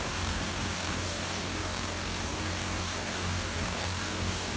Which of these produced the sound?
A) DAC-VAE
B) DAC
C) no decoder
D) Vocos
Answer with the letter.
B